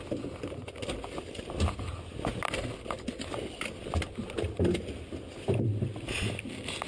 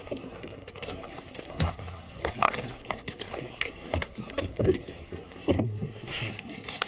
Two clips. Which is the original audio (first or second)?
first